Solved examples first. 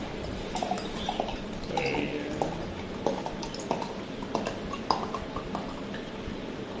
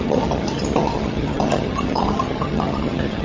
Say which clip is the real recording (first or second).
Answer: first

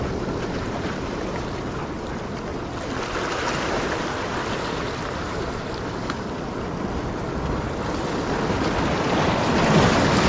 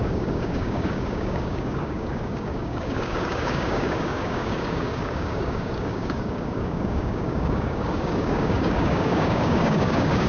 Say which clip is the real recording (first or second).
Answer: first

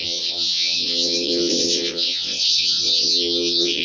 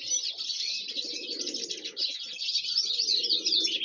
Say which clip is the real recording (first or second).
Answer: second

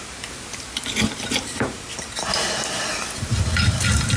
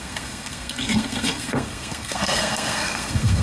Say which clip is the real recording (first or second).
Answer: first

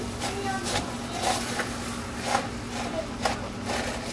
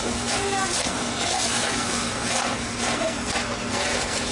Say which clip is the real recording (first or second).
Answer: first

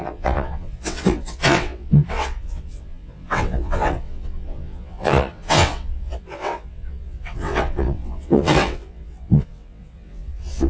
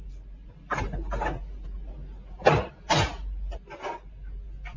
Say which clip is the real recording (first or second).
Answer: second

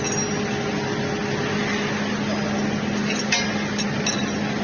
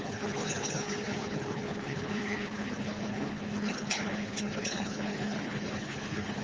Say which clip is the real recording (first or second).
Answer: first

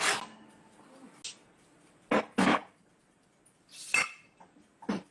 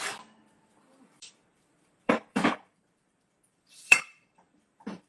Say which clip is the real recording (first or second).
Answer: first